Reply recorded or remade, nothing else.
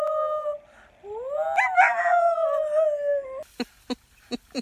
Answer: recorded